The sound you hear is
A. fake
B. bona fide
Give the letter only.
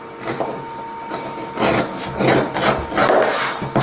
B